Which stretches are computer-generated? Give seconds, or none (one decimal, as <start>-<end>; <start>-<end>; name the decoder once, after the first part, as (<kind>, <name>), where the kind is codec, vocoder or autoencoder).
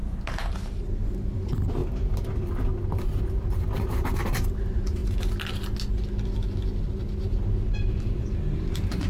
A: 0.0-1.8 (vocoder, BigVGAN v2); 2.9-5.0; 7.6-9.1